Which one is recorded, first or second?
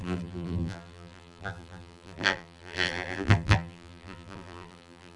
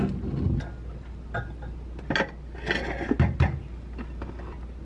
second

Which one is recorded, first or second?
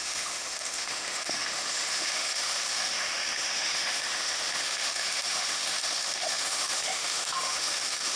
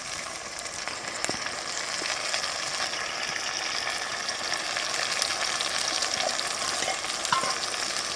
second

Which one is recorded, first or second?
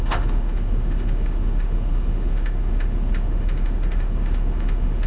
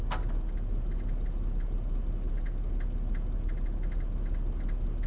second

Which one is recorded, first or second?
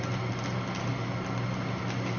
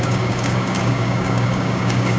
first